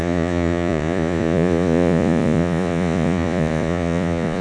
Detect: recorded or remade remade